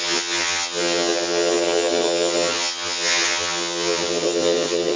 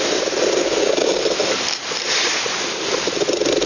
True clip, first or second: second